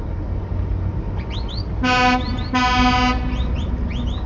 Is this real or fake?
real